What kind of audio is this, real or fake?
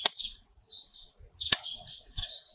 fake